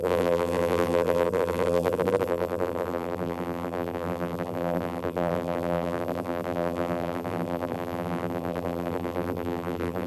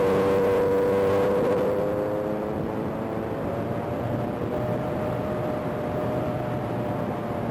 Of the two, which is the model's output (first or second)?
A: first